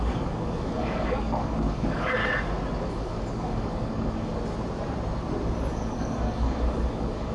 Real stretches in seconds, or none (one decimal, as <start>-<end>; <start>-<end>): 2.2-2.9; 4.3-5.7